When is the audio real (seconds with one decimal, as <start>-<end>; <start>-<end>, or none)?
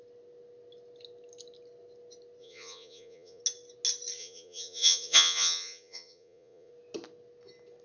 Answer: 0.0-2.4; 3.4-4.2; 6.7-7.8